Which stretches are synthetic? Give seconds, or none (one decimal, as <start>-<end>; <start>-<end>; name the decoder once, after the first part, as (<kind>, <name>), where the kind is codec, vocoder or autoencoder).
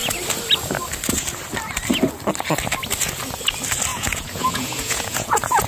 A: 3.9-5.7 (vocoder, Vocos)